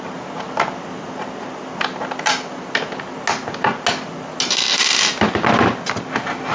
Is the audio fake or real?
real